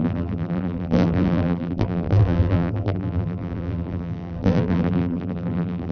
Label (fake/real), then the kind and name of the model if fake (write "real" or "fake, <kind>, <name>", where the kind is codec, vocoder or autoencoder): fake, vocoder, BigVGAN v2